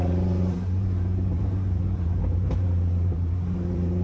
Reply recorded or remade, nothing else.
remade